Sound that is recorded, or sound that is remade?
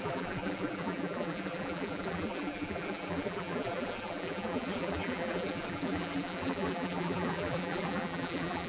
remade